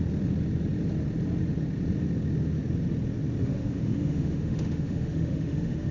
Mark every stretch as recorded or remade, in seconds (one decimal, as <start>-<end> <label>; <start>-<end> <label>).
0.0-3.4 recorded; 3.4-5.9 remade